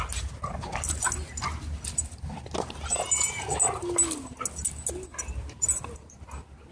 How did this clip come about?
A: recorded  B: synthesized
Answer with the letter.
A